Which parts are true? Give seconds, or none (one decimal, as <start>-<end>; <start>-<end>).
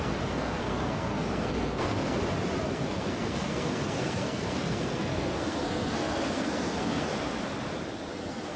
2.2-2.7; 7.1-8.1